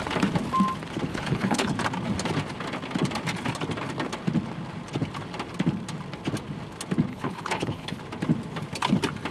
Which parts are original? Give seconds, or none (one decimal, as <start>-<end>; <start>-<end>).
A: 0.0-1.1; 1.7-7.1; 8.0-9.3